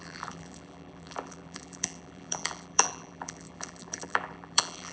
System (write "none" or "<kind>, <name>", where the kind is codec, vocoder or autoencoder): vocoder, BigVGAN v2